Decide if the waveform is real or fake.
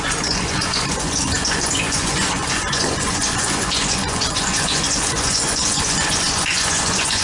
fake